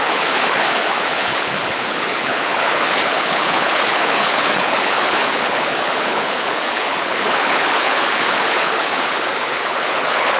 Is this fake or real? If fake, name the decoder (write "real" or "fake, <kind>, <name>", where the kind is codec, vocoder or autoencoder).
fake, codec, HILCodec